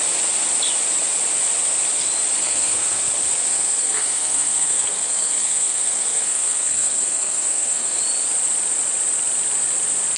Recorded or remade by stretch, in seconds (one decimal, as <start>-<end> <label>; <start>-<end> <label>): 0.0-2.4 recorded; 2.4-3.0 remade; 3.0-3.5 recorded; 3.5-8.0 remade; 8.0-10.2 recorded